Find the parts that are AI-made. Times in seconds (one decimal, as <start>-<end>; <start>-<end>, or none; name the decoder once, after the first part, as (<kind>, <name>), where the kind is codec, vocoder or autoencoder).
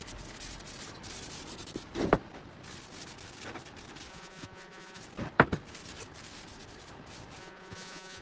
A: 4.1-5.0 (vocoder, Vocos); 7.4-8.2